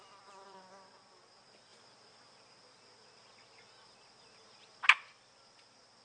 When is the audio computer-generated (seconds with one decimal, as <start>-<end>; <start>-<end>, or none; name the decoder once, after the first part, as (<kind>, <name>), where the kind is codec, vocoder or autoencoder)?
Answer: none